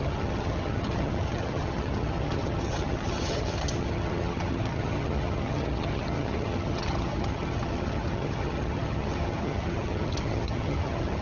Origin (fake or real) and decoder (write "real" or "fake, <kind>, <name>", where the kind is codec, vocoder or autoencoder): fake, vocoder, HiFi-GAN